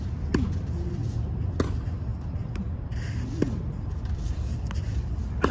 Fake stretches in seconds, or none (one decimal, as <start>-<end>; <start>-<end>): 2.1-5.5